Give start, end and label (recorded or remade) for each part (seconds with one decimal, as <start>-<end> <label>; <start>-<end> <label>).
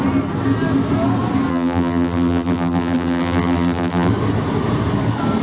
0.0-1.5 recorded; 1.5-4.1 remade; 4.1-5.4 recorded